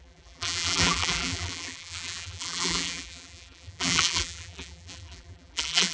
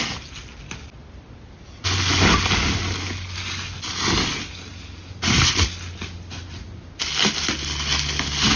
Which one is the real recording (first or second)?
second